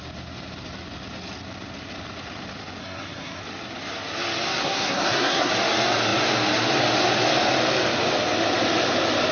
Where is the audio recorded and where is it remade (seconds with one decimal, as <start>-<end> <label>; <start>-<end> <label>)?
0.0-2.8 recorded; 2.8-3.4 remade; 3.4-4.6 recorded; 4.6-5.5 remade; 5.5-9.3 recorded